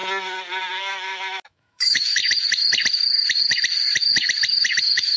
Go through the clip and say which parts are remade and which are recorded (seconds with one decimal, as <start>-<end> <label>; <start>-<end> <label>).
0.0-0.8 recorded; 0.8-2.2 remade; 2.2-4.8 recorded; 4.8-5.2 remade

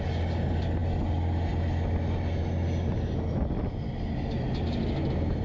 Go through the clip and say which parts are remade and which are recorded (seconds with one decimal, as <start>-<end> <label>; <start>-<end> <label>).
0.0-5.4 recorded

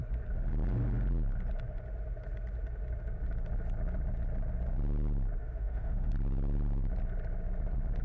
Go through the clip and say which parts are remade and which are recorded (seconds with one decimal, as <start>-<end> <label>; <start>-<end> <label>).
0.0-5.4 recorded; 5.4-6.1 remade; 6.1-8.0 recorded